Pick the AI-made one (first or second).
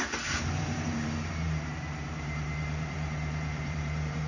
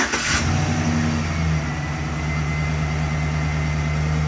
first